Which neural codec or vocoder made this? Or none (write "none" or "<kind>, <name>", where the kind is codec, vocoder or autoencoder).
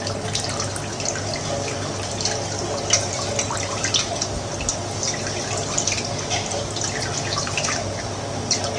none